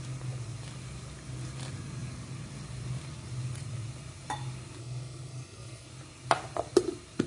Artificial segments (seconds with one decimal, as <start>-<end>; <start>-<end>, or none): 4.8-5.9